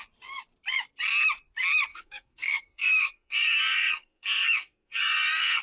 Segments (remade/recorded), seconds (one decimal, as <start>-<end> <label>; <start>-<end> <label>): 0.0-1.9 recorded; 1.9-5.6 remade

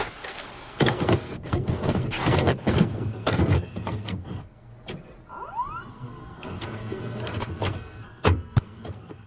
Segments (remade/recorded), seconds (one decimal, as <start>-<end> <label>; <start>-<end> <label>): 0.0-4.7 remade; 4.7-5.9 recorded; 5.9-9.3 remade